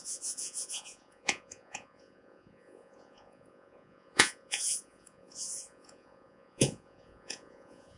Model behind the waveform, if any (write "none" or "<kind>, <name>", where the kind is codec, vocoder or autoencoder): vocoder, Vocos